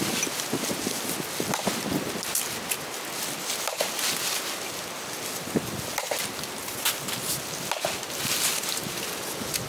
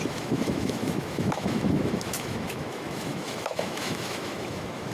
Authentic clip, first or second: first